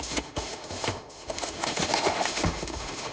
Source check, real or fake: fake